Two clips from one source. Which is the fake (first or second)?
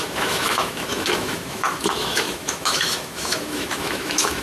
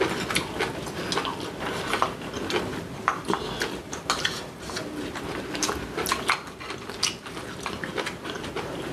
first